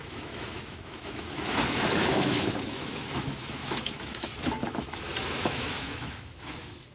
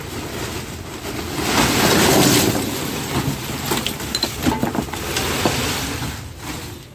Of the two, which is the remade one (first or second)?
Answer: first